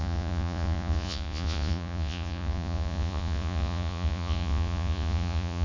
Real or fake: fake